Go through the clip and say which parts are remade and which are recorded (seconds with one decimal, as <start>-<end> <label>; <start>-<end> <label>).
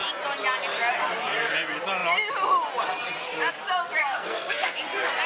0.0-4.0 recorded; 4.0-4.8 remade; 4.8-5.3 recorded